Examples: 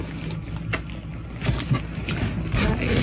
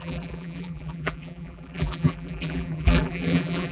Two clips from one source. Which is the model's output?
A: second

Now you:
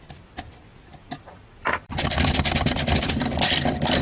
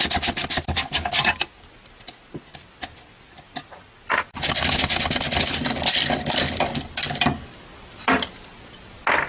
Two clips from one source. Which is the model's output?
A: first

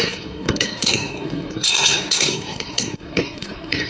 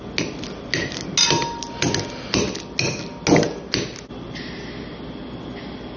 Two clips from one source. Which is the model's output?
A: first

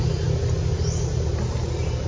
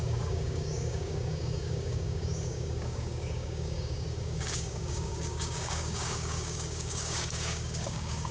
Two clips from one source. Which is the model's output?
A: second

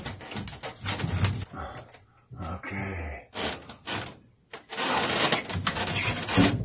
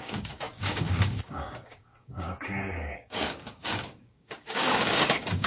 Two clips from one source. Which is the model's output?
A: second